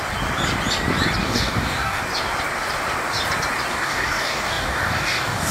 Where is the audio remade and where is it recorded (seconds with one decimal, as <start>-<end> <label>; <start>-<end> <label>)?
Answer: 0.0-1.2 recorded; 1.2-2.0 remade; 2.0-3.7 recorded; 3.7-5.5 remade